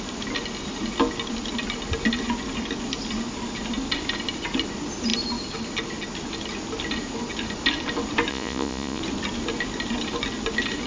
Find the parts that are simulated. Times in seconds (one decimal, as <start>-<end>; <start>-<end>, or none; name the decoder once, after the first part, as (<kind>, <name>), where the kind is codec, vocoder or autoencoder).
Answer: 8.3-9.0 (vocoder, Vocos)